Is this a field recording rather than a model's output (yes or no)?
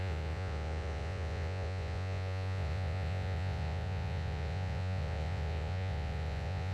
no